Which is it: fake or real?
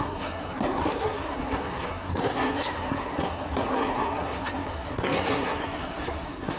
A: fake